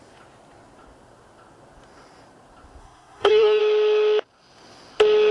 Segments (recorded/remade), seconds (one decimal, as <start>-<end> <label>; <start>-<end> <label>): 0.0-2.8 recorded; 2.8-3.6 remade; 3.6-5.3 recorded